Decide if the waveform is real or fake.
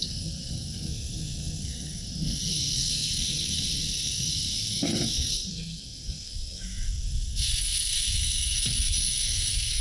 fake